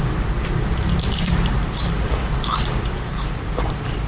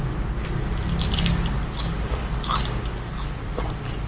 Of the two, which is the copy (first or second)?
first